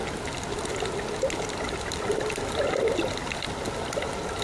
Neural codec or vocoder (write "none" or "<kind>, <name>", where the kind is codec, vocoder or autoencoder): none